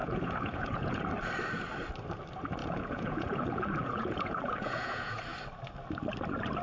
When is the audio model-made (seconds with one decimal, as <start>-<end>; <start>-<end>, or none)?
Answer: 0.0-1.0; 2.6-5.2